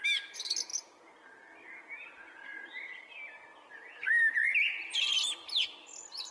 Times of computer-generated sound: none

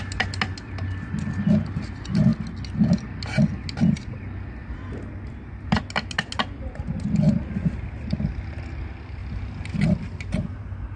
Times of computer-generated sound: none

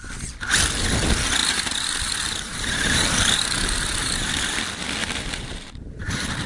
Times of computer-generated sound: 1.4-4.6 (vocoder, BigVGAN v2); 5.0-6.1

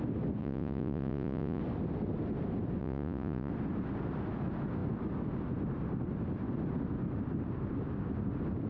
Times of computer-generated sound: 0.4-1.6 (vocoder, Vocos); 2.8-3.5

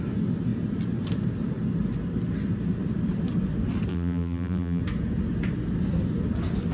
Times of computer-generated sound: 3.9-4.8 (vocoder, BigVGAN v2)

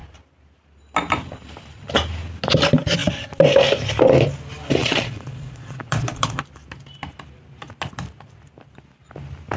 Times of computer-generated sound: 4.8-6.4 (vocoder, Vocos)